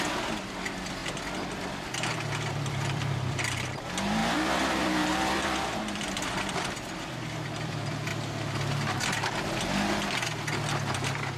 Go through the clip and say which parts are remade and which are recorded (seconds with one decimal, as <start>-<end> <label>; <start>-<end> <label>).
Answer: 0.0-1.0 remade; 1.0-2.5 recorded; 2.5-8.1 remade; 8.1-11.4 recorded